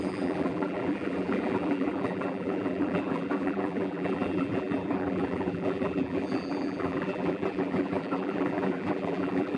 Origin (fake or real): fake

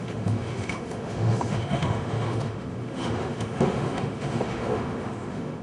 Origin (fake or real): fake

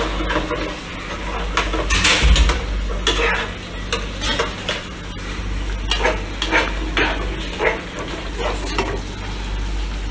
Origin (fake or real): real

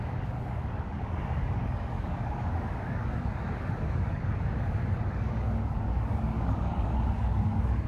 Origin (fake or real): fake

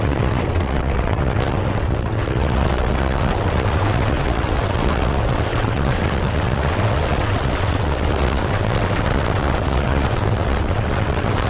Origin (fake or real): fake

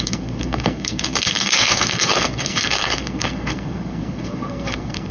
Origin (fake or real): fake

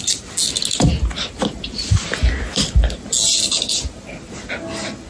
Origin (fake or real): real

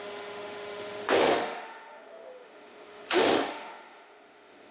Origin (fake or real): fake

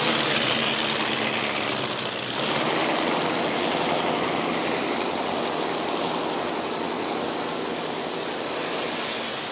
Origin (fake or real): real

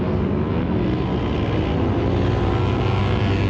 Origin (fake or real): real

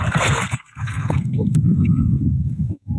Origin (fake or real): fake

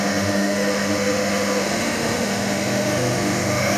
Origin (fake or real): fake